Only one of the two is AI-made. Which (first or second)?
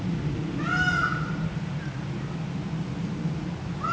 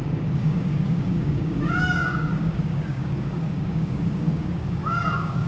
second